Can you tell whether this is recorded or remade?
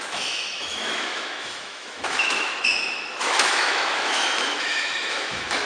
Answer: remade